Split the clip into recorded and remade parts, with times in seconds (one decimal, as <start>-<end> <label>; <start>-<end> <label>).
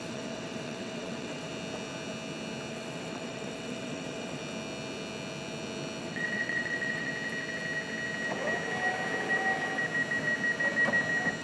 0.0-1.5 remade; 1.5-2.7 recorded; 2.7-4.4 remade; 4.4-6.0 recorded; 6.0-7.1 remade; 7.1-11.4 recorded